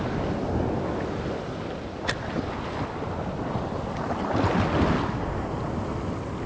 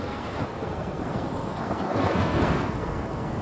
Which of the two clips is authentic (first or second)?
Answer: first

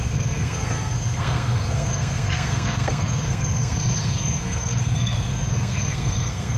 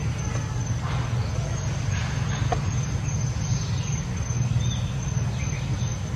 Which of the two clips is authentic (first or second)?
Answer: second